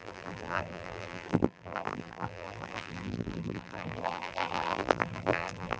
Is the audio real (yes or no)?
no